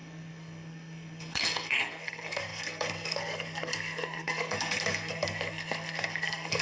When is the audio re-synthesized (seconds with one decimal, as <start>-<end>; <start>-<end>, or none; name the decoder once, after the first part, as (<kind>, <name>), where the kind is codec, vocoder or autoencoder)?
0.0-6.6 (codec, SNAC)